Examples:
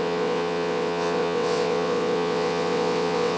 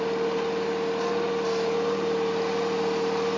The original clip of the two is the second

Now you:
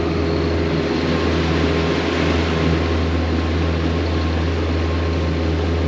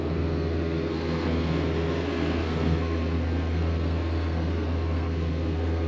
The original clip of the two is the first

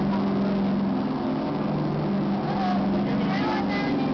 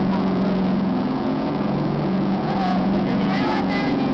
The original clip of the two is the first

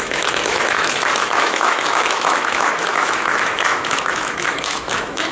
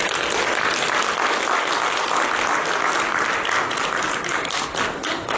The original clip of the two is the second